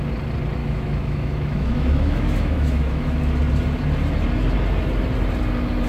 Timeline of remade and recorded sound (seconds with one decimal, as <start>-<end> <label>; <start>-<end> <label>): 0.0-0.6 recorded; 0.6-3.2 remade; 3.2-5.9 recorded